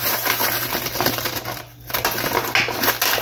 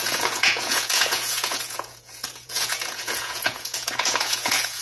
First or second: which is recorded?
first